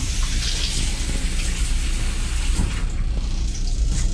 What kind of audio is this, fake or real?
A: real